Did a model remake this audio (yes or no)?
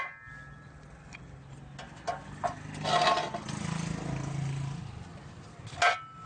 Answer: no